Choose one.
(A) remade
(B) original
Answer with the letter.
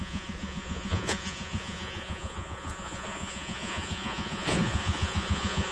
A